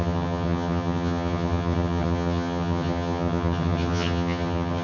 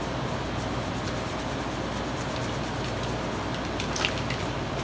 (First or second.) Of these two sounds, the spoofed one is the first